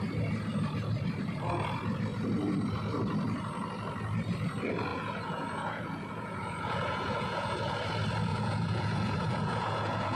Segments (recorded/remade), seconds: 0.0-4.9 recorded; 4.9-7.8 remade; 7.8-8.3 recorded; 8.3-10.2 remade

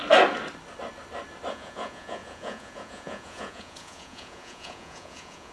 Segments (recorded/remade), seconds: 0.0-1.5 recorded; 1.5-5.5 remade

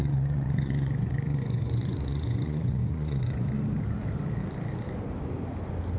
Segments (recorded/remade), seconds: 0.0-3.6 remade; 3.6-6.0 recorded